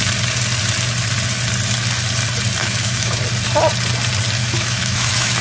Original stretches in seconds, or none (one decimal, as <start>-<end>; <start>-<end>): 0.0-2.6; 3.2-4.4